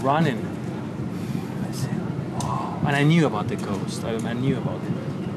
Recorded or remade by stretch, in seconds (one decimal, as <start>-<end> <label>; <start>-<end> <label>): 0.0-2.5 remade; 2.5-3.4 recorded; 3.4-5.4 remade